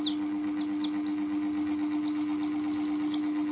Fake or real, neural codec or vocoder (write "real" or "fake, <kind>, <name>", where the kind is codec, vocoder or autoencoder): real